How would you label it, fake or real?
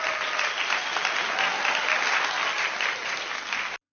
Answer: real